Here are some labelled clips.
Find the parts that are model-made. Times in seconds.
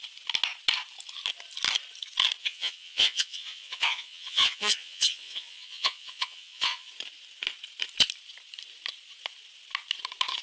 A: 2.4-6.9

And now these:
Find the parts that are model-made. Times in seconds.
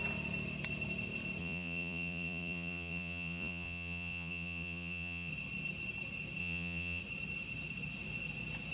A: 1.4-5.3; 6.4-7.0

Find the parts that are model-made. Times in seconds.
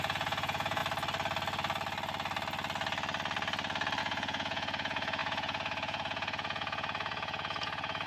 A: 0.0-0.8; 4.0-8.1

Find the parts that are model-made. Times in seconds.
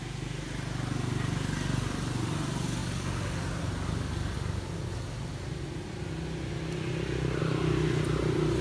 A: none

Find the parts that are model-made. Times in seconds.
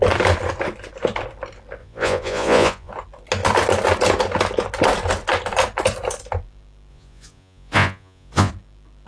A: 1.8-2.9; 6.9-8.5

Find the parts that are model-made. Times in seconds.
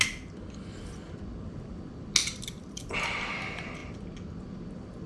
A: none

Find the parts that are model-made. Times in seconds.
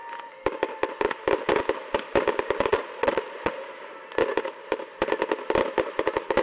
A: 2.7-3.5